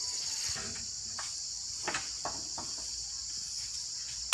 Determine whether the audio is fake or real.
real